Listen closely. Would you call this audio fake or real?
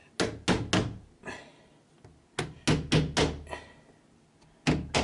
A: real